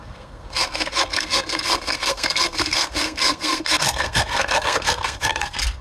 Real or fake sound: fake